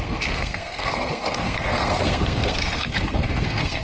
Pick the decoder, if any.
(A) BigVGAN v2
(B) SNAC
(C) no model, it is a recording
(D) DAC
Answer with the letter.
B